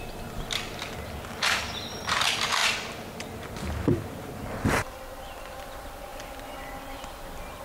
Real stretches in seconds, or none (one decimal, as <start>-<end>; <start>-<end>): 0.0-2.6; 5.6-6.1